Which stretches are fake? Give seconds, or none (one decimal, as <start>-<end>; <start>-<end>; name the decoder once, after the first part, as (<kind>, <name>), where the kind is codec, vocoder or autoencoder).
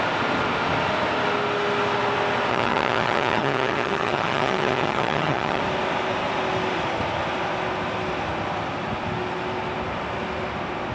2.5-5.6 (vocoder, HiFi-GAN)